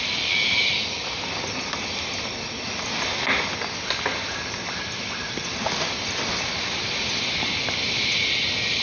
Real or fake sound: real